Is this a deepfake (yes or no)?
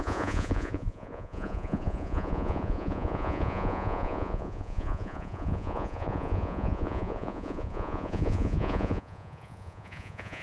yes